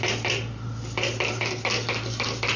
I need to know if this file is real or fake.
real